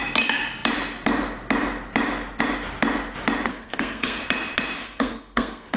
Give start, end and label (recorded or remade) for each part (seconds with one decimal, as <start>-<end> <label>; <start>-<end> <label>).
0.0-3.5 recorded; 3.5-4.2 remade; 4.2-4.8 recorded; 4.8-5.8 remade